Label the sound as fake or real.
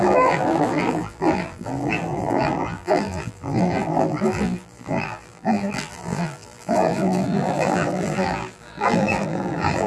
fake